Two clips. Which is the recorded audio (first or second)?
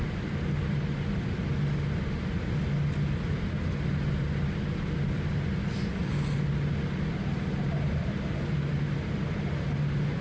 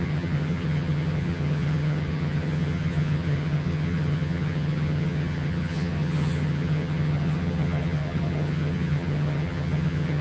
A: first